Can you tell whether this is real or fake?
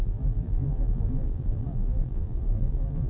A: fake